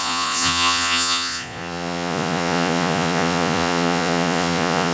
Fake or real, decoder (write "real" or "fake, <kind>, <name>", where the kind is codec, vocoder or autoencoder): fake, vocoder, Vocos